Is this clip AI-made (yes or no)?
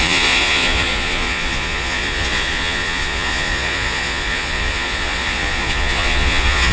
yes